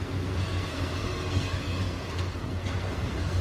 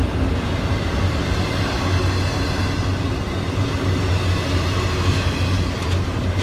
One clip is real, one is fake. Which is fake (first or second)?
first